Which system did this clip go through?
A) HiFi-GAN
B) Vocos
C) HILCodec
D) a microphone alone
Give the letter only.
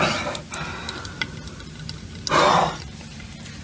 D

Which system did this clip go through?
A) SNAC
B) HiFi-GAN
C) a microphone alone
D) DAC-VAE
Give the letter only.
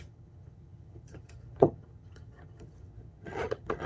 B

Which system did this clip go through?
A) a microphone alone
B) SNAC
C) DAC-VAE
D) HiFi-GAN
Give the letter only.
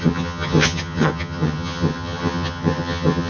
D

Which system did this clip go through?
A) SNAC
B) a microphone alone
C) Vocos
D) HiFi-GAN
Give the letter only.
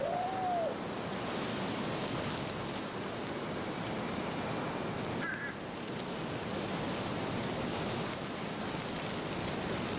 B